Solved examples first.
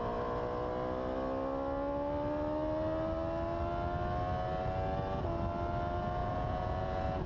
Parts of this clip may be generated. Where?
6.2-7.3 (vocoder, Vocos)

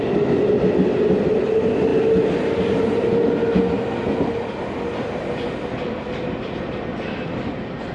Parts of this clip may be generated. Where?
none

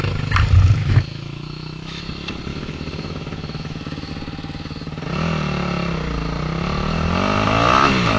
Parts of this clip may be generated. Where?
0.8-2.0 (autoencoder, DAC-VAE); 2.5-4.1

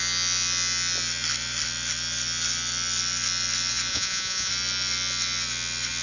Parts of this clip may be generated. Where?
3.9-4.5 (vocoder, Vocos)